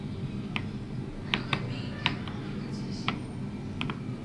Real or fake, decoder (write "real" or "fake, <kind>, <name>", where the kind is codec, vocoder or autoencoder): real